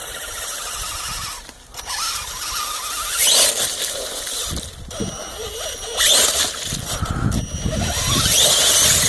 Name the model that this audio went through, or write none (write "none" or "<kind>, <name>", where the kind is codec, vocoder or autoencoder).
none